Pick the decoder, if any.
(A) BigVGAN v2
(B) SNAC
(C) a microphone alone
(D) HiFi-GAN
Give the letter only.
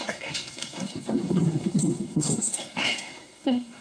B